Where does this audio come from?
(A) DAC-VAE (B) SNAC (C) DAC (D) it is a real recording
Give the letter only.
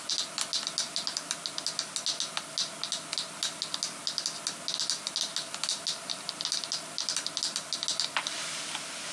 D